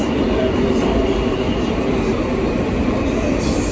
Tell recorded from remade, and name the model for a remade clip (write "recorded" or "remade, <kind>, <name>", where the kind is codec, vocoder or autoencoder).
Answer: recorded